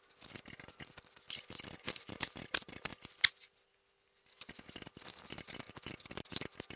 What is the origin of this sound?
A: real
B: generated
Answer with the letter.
A